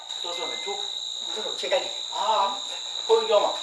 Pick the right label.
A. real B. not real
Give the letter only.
A